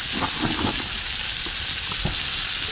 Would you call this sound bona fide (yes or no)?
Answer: yes